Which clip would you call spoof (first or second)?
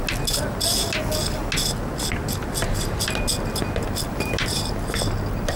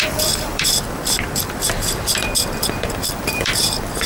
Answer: second